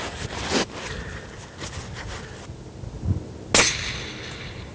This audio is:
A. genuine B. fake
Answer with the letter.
A